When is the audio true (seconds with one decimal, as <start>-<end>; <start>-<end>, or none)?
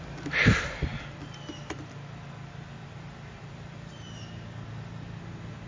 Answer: 0.0-0.9; 3.9-5.7